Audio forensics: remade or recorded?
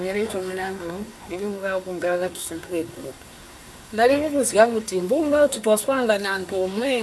remade